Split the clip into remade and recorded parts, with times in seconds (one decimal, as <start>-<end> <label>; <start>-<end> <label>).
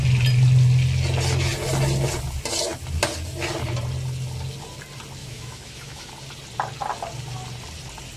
0.0-5.2 recorded; 5.2-6.1 remade; 6.1-8.2 recorded